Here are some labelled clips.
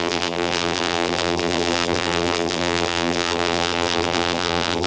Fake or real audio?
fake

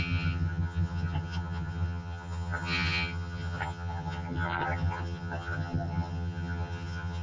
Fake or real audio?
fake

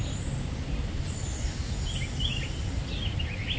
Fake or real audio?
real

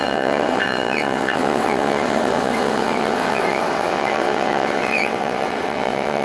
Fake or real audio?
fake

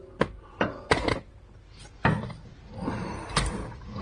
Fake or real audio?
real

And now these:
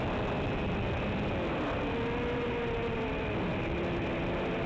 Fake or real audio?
real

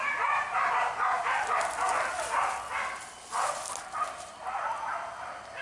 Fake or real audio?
real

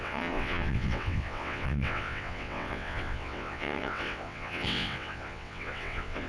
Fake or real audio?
fake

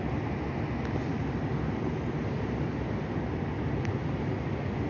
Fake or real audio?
real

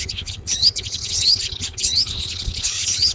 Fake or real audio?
fake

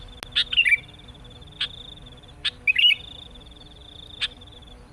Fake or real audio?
real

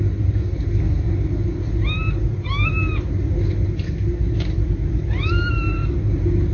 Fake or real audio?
real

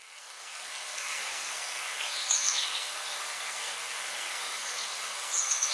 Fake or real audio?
fake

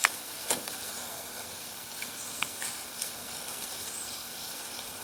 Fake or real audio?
fake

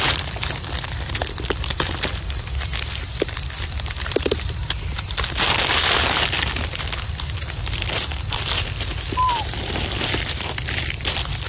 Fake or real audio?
fake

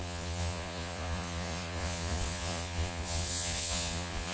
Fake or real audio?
fake